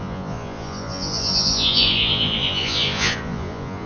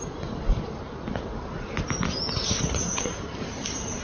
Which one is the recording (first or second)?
second